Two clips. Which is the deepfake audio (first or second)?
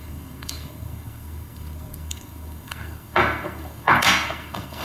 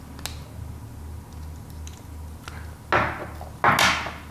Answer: first